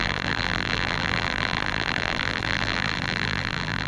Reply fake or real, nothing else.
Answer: fake